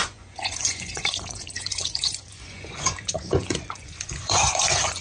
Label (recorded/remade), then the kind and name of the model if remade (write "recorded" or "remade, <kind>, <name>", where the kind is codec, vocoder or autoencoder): remade, vocoder, Vocos